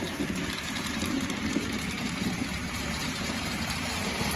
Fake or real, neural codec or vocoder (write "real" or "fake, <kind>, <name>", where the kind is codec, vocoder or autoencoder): fake, vocoder, BigVGAN v2